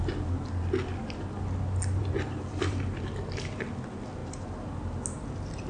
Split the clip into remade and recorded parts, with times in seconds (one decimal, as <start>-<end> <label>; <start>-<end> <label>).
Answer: 0.0-2.0 recorded; 2.0-3.0 remade; 3.0-5.7 recorded